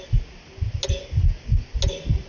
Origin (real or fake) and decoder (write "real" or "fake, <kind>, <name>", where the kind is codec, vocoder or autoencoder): real